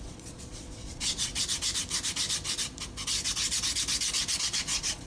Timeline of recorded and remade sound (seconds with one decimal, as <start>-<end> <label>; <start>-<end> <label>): 0.0-1.3 remade; 1.3-4.4 recorded; 4.4-5.1 remade